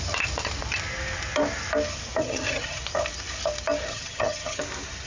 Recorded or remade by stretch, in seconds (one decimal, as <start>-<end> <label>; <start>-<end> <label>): 0.0-2.2 recorded; 2.2-2.8 remade; 2.8-3.9 recorded; 3.9-4.6 remade; 4.6-5.1 recorded